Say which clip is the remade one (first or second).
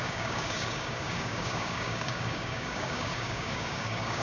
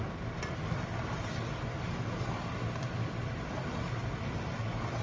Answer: first